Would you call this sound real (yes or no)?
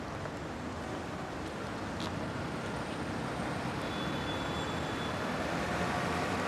yes